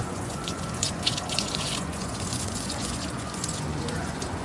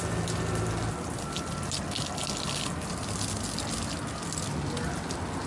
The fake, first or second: first